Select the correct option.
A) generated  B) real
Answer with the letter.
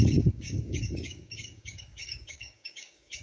A